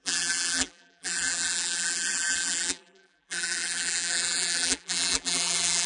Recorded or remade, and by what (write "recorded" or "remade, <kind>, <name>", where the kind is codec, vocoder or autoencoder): remade, vocoder, BigVGAN v2